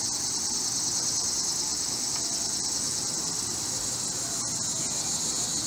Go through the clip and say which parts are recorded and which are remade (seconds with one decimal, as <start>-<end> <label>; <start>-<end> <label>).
0.0-1.7 recorded; 1.7-3.2 remade; 3.2-5.7 recorded